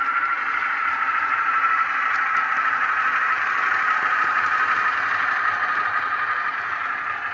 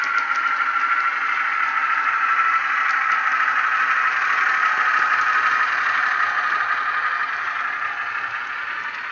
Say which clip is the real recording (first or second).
second